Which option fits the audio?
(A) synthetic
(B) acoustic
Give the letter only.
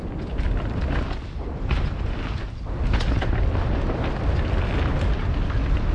B